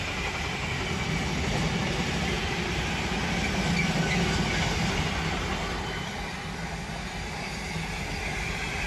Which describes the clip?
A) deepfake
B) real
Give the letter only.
B